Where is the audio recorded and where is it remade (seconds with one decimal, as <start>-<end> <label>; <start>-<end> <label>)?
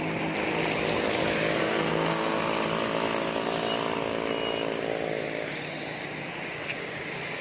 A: 0.0-1.6 recorded; 1.6-2.4 remade; 2.4-7.4 recorded